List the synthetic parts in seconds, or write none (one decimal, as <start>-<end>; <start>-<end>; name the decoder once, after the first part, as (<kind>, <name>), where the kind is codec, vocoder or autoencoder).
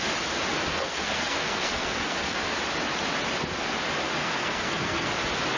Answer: 0.7-2.4 (codec, SNAC); 4.2-5.1